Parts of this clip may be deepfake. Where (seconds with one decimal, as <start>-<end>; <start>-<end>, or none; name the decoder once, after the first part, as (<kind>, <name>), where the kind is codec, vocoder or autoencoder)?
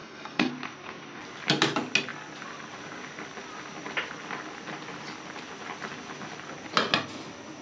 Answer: 0.0-0.5 (codec, SNAC)